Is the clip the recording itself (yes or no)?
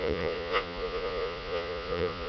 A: no